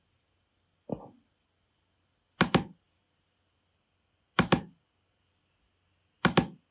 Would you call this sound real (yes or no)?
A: yes